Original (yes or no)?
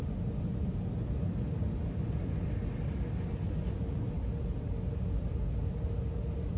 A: yes